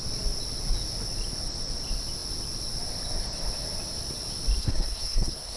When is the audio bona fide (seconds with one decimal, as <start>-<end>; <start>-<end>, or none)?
0.0-4.6